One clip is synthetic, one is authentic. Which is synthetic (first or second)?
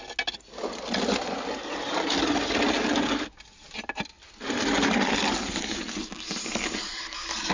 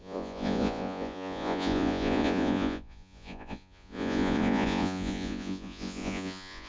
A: second